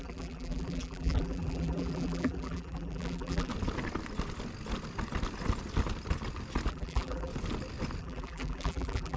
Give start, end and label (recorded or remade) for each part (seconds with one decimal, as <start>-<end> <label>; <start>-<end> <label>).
0.0-3.5 remade; 3.5-6.7 recorded; 6.7-7.3 remade; 7.3-8.0 recorded; 8.0-9.2 remade